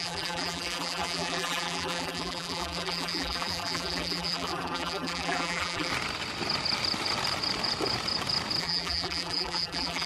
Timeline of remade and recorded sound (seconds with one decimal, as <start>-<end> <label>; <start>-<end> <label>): 0.0-5.9 remade; 5.9-8.6 recorded; 8.6-10.1 remade